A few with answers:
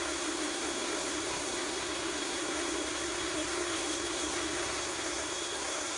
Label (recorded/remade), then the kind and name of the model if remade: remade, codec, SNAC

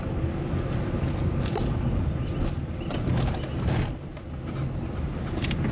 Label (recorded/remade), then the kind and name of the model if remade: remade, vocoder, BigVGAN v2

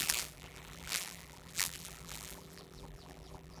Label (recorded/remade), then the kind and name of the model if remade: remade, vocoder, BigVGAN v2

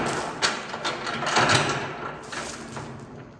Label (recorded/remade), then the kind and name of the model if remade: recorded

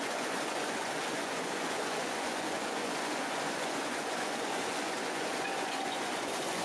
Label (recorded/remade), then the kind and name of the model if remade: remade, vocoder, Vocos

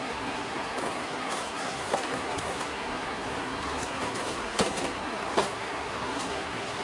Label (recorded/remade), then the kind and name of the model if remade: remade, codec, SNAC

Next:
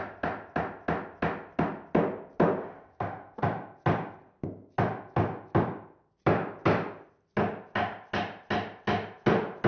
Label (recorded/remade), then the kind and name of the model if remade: recorded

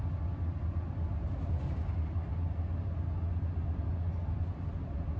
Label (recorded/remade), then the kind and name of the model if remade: recorded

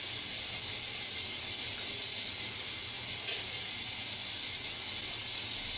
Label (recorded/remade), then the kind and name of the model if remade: recorded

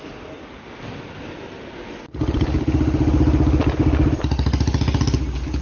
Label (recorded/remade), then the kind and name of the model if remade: recorded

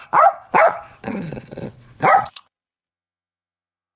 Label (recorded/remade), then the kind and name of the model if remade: remade, vocoder, Vocos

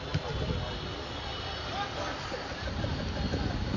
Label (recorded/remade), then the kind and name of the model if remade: recorded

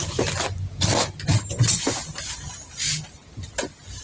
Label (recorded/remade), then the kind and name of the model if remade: recorded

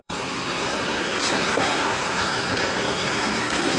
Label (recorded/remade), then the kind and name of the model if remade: remade, codec, SNAC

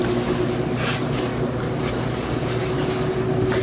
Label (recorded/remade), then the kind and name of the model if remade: recorded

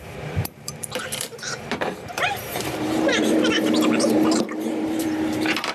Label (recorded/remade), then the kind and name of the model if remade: remade, vocoder, BigVGAN v2